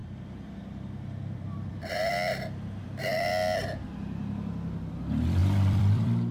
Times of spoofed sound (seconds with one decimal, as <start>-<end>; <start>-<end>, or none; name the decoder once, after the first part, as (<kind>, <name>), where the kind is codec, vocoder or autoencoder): 0.0-3.0 (vocoder, BigVGAN v2); 5.4-6.3